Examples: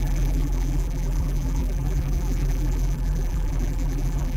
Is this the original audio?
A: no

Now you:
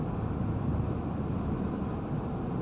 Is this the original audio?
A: yes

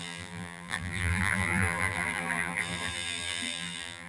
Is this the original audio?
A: no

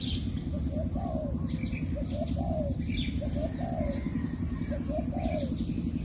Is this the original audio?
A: yes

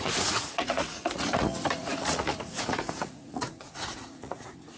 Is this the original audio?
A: no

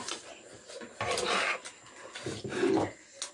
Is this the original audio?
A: yes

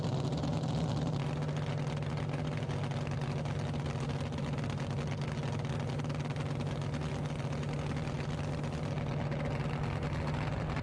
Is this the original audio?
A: yes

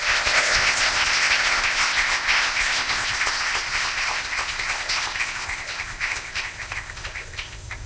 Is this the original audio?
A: no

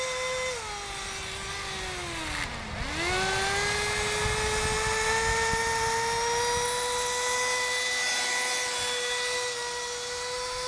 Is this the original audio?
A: yes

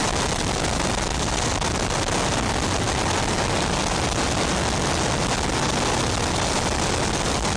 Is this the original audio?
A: yes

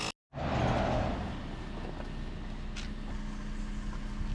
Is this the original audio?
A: yes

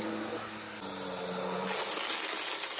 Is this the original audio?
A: yes